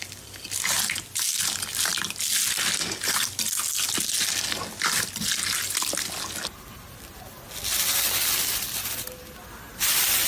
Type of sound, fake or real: real